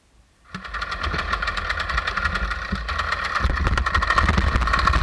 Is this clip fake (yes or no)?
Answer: no